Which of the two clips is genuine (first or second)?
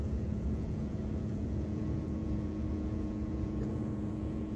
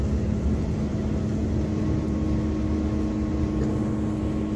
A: second